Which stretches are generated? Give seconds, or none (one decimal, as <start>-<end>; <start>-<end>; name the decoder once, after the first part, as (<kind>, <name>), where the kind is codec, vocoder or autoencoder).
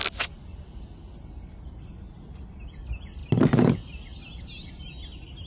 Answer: none